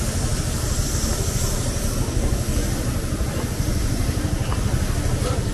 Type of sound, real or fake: real